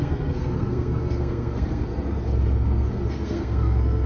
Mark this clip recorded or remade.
remade